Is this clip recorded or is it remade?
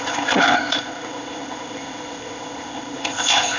remade